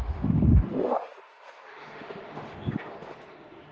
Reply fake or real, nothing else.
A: fake